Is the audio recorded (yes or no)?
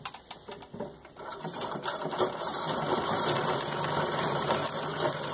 no